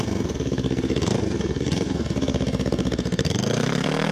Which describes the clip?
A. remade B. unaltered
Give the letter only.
A